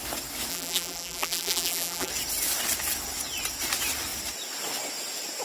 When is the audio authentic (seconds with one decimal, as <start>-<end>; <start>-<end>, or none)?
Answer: 0.0-0.5; 2.1-5.4